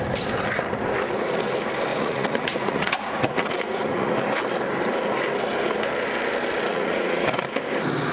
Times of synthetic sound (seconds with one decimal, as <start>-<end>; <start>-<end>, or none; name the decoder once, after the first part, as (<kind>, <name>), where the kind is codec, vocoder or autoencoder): 1.9-4.1 (vocoder, Vocos); 6.7-7.4